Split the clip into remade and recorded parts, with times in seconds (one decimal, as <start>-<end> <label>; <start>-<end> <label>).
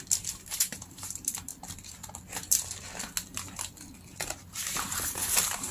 0.0-1.5 remade; 1.5-4.5 recorded; 4.5-5.7 remade